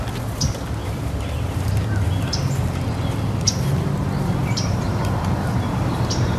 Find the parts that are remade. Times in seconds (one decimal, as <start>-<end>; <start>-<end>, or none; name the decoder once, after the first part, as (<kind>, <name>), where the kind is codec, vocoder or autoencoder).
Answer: 4.4-6.4 (vocoder, BigVGAN v2)